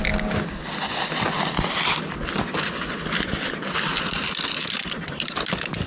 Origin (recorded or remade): recorded